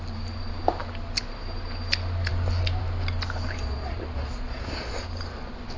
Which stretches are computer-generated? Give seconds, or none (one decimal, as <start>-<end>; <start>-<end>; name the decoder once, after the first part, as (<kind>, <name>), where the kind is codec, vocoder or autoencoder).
3.6-4.9 (vocoder, Vocos)

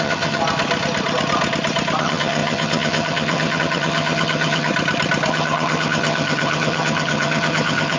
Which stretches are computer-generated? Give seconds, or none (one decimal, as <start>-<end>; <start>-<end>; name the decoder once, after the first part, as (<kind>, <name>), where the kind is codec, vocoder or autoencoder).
0.0-0.4 (vocoder, HiFi-GAN); 2.0-4.7; 5.3-8.0

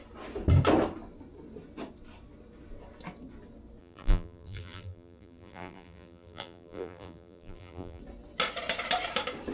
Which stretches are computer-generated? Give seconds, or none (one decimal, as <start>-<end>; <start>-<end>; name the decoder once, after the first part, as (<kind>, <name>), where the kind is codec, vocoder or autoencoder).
3.8-8.0 (vocoder, BigVGAN v2)

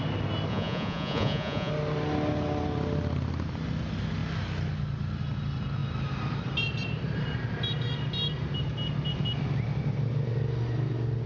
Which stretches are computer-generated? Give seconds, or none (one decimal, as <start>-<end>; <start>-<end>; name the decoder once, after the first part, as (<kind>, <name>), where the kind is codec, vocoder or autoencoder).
0.5-1.7 (vocoder, Vocos)